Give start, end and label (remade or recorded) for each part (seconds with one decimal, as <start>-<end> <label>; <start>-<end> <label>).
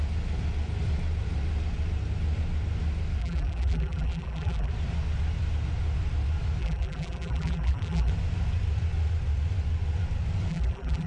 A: 0.0-3.2 recorded; 3.2-4.7 remade; 4.7-6.6 recorded; 6.6-8.1 remade; 8.1-10.5 recorded; 10.5-11.1 remade